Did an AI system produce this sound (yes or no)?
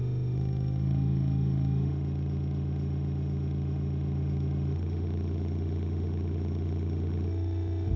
yes